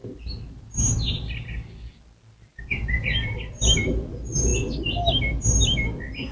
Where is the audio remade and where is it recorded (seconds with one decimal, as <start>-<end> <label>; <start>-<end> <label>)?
0.0-6.3 recorded